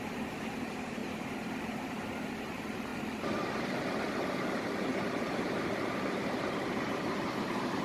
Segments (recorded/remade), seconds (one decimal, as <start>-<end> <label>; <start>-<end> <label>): 0.0-1.0 remade; 1.0-1.6 recorded; 1.6-2.9 remade; 2.9-4.1 recorded; 4.1-7.8 remade